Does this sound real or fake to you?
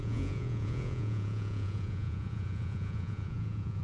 fake